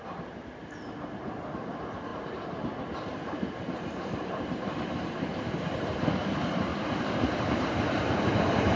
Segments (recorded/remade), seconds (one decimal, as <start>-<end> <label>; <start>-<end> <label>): 0.0-6.7 remade; 6.7-7.3 recorded; 7.3-8.8 remade